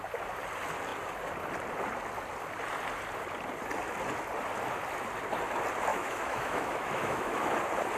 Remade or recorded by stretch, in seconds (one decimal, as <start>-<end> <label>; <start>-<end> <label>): 0.0-5.9 recorded; 5.9-7.6 remade; 7.6-8.0 recorded